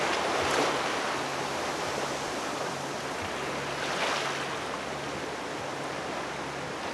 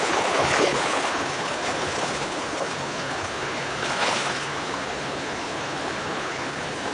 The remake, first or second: second